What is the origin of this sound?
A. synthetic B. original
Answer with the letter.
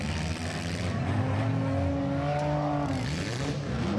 B